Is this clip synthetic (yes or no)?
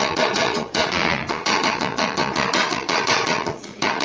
yes